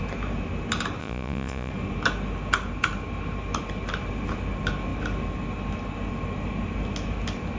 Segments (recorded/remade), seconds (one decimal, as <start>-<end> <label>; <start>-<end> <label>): 0.0-1.0 recorded; 1.0-1.7 remade; 1.7-7.6 recorded

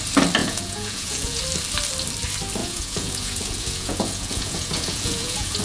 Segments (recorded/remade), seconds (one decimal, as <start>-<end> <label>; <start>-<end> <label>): 0.0-0.4 recorded; 0.4-1.4 remade; 1.4-2.6 recorded; 2.6-5.6 remade

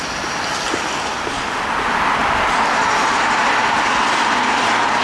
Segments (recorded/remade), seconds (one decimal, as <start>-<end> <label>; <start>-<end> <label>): 0.0-5.0 recorded

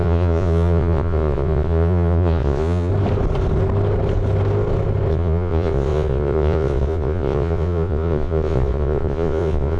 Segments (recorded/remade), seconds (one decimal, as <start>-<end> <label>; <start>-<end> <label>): 0.0-2.9 remade; 2.9-5.1 recorded; 5.1-9.8 remade